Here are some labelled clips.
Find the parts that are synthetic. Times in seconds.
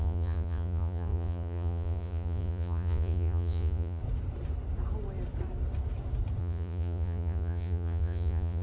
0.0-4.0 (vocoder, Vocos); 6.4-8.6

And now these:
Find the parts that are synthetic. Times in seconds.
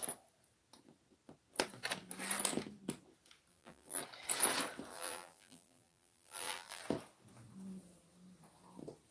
3.5-4.0 (vocoder, BigVGAN v2); 4.9-6.8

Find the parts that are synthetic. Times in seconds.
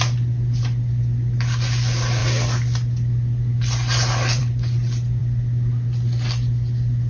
none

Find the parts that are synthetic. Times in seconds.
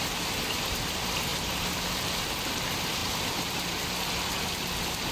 none